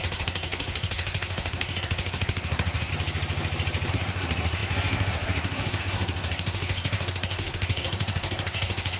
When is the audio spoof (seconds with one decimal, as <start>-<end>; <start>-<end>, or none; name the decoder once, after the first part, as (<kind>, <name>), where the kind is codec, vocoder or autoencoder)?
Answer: 0.0-2.9 (codec, SNAC); 3.9-9.0